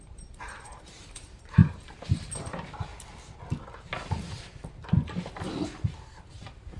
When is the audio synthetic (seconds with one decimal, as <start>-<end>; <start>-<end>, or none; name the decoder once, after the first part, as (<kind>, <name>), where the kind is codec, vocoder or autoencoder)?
0.0-2.9 (vocoder, BigVGAN v2); 6.3-6.8